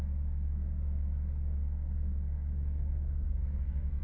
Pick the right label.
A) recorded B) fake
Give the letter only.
B